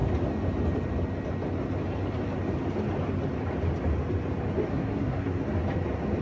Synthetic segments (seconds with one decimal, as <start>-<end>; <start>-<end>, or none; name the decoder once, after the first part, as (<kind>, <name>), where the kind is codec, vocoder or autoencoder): 4.7-5.5 (codec, SNAC)